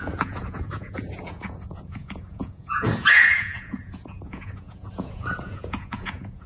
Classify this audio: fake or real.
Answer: fake